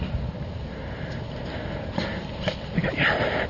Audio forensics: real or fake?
real